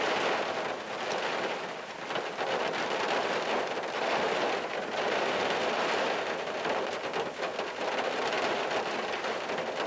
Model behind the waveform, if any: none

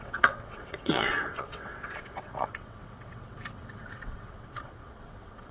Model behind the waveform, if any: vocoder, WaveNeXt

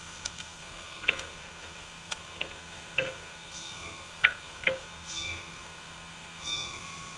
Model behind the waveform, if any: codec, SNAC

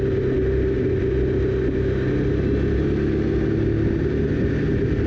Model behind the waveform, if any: none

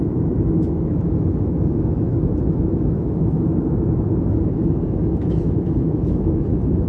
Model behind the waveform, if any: autoencoder, DAC-VAE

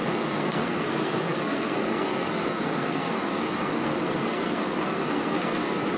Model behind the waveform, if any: codec, SNAC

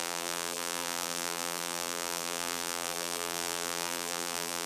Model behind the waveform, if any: vocoder, BigVGAN v2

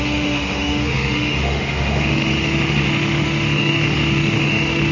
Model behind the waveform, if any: autoencoder, DAC-VAE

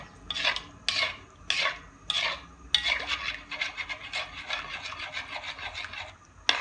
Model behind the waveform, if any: none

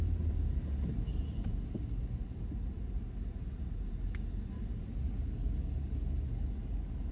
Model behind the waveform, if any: none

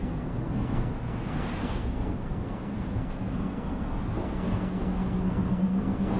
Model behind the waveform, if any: codec, SNAC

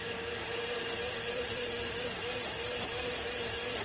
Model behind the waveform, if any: vocoder, BigVGAN v2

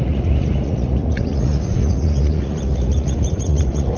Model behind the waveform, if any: vocoder, Vocos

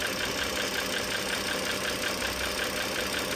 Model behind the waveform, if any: none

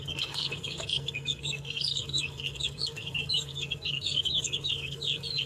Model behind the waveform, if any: codec, SNAC